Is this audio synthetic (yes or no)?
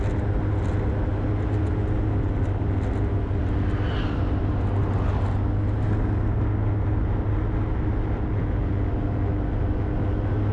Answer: no